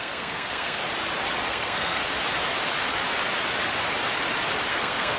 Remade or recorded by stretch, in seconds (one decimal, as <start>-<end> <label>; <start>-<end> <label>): 0.0-0.8 remade; 0.8-1.5 recorded; 1.5-2.0 remade; 2.0-4.7 recorded; 4.7-5.2 remade